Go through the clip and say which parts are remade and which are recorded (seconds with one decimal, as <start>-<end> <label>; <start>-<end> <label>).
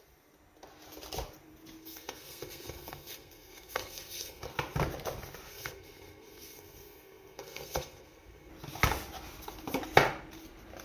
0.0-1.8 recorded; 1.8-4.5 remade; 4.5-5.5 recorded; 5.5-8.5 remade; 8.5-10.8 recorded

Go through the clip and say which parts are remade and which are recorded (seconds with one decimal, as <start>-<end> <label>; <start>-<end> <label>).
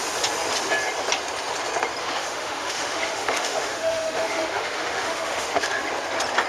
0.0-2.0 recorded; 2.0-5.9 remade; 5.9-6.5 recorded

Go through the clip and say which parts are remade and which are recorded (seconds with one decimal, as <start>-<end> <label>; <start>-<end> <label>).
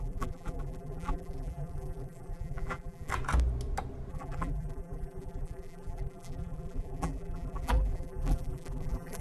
0.0-3.1 remade; 3.1-4.1 recorded; 4.1-9.2 remade